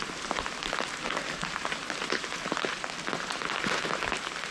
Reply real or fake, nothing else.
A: fake